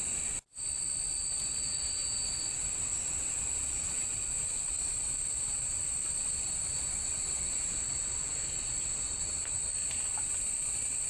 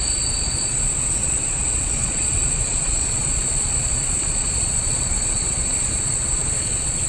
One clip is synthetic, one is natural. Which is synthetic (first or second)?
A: second